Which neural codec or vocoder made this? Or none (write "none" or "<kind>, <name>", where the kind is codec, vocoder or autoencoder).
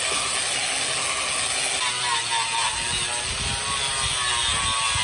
none